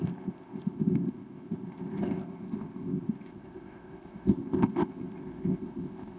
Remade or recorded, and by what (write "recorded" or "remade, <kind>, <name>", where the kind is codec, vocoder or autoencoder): remade, codec, ZipCodec